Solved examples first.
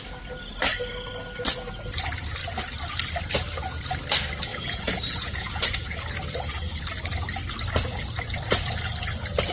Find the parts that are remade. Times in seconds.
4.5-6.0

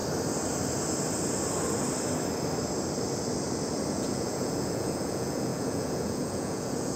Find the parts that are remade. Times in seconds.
3.9-7.0

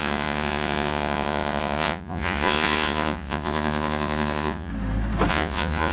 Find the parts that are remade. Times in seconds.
0.0-4.7; 5.3-5.9